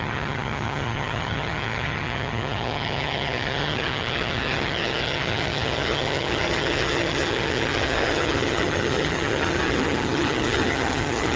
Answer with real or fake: fake